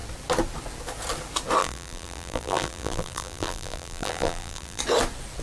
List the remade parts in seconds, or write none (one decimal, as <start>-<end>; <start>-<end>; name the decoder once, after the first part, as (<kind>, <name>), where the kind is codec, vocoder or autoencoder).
1.6-4.8 (vocoder, BigVGAN v2)